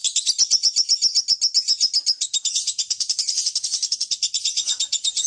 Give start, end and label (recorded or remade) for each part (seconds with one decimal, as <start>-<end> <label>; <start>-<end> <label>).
0.0-2.5 recorded; 2.5-5.3 remade